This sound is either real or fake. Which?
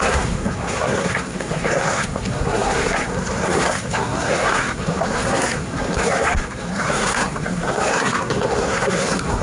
fake